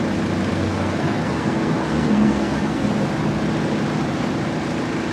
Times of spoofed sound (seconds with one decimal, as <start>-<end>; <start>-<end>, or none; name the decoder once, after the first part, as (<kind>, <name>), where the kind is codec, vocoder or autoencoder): 0.5-2.9 (codec, SNAC)

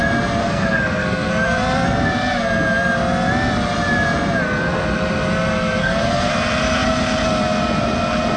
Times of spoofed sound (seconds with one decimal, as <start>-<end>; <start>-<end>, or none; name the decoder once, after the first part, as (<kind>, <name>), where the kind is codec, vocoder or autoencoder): 0.4-1.3 (codec, SNAC); 5.8-6.3

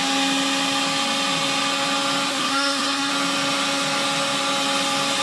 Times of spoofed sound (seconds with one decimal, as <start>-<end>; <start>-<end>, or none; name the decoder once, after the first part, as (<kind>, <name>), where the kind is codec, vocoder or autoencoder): 2.3-3.1 (codec, SNAC)